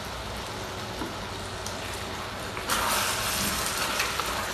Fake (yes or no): no